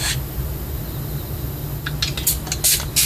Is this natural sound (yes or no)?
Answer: yes